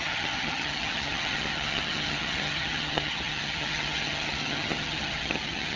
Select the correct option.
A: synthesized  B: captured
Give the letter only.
A